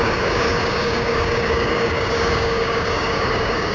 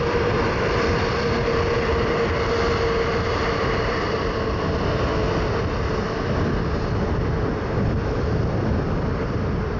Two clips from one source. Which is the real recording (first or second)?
second